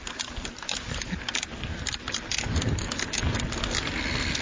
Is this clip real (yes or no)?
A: yes